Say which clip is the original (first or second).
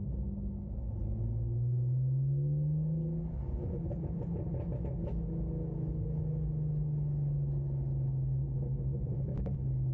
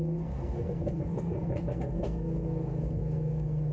first